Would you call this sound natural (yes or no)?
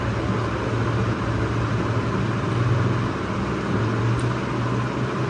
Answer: yes